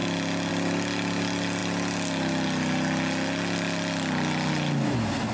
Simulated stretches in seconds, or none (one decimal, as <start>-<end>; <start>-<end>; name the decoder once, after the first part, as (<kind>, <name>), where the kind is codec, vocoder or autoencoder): none